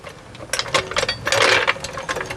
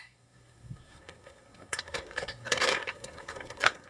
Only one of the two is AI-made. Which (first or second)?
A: second